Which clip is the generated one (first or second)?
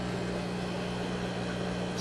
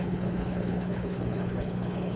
second